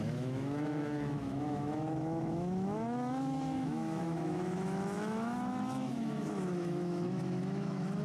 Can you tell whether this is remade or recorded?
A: remade